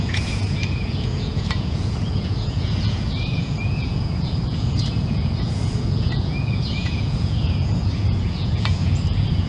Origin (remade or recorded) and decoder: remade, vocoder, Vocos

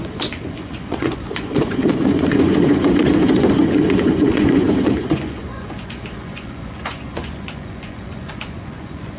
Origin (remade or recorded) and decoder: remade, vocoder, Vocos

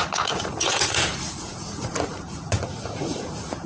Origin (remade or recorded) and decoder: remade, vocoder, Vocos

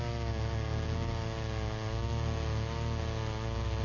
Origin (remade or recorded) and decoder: recorded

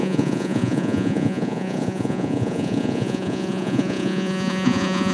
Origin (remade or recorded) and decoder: remade, vocoder, Vocos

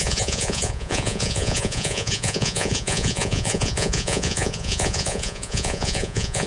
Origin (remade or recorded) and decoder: remade, vocoder, Vocos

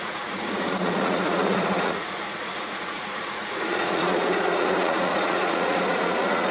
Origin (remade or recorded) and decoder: remade, vocoder, Vocos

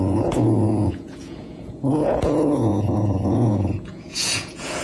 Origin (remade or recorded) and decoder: remade, vocoder, Vocos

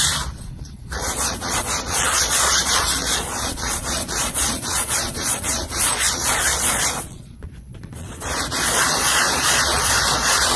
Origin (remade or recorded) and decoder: remade, vocoder, Vocos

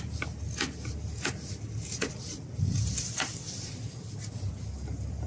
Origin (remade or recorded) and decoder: recorded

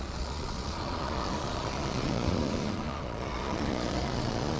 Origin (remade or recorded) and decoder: remade, vocoder, Vocos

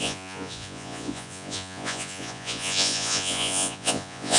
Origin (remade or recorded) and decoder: remade, vocoder, Vocos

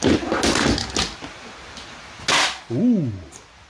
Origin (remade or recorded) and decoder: recorded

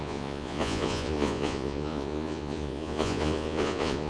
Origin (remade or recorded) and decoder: remade, vocoder, Vocos